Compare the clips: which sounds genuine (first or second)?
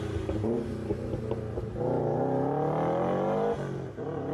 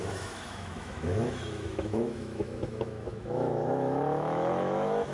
first